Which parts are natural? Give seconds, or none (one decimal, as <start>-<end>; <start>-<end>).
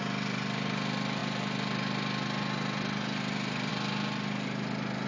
0.0-5.1